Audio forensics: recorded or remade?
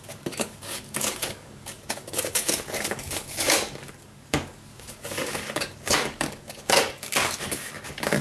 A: remade